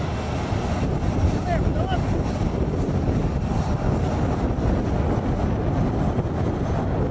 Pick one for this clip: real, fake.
real